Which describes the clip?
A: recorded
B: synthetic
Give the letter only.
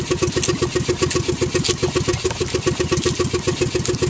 A